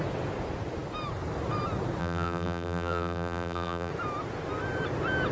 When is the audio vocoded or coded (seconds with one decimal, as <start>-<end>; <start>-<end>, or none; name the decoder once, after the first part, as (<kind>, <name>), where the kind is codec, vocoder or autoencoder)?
2.0-3.9 (vocoder, BigVGAN v2)